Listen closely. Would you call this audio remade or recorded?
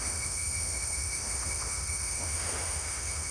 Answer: remade